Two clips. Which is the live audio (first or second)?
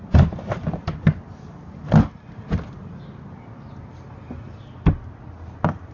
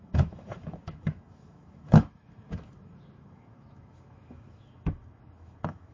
first